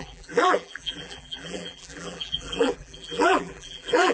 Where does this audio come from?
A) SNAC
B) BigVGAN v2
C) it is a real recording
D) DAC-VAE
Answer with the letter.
B